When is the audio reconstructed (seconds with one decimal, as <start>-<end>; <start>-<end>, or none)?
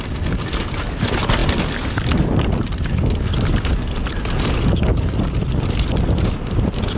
0.0-3.7; 5.9-7.0